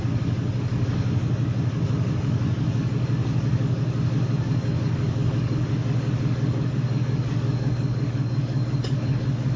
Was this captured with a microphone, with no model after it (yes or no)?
no